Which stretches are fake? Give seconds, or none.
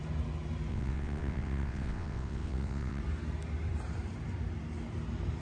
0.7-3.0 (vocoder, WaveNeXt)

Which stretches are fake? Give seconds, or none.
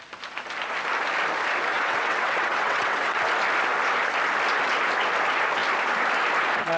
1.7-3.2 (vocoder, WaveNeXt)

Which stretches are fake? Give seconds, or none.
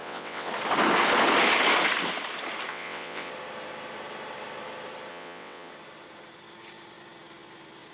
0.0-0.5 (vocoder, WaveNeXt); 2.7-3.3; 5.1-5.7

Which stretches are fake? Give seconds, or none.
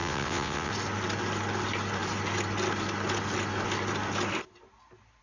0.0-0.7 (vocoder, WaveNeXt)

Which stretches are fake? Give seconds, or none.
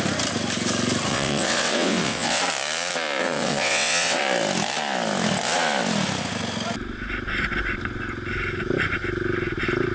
1.1-2.4 (vocoder, WaveNeXt); 3.2-4.2